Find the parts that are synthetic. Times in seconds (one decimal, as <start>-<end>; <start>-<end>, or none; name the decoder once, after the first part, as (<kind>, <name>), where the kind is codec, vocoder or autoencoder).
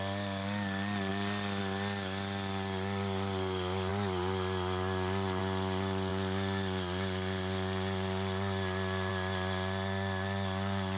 none